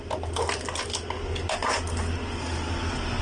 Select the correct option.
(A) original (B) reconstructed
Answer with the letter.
A